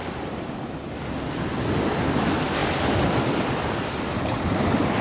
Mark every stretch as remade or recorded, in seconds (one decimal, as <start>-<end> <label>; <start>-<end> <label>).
0.0-5.0 recorded